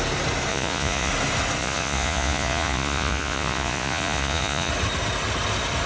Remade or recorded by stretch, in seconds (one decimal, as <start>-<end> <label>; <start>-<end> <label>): 0.0-0.5 recorded; 0.5-1.1 remade; 1.1-1.6 recorded; 1.6-4.7 remade; 4.7-5.9 recorded